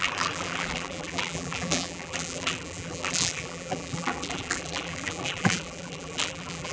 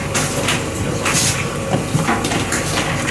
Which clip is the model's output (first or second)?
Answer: first